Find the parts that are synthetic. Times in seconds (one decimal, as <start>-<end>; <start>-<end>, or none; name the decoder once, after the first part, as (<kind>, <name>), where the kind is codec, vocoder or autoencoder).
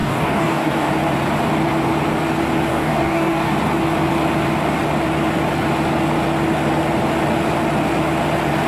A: 0.0-0.9 (codec, DAC); 2.7-3.5